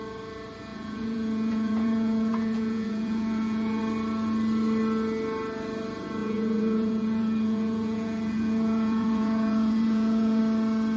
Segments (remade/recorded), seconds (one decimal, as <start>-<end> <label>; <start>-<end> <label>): 0.0-0.7 recorded; 0.7-3.8 remade; 3.8-6.2 recorded; 6.2-10.4 remade; 10.4-11.0 recorded